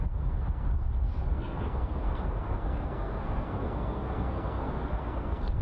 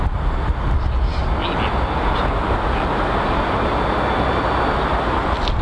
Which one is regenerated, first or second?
first